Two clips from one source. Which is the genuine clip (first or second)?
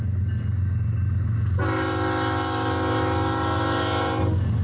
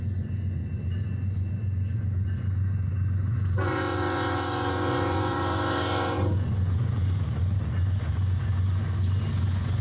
first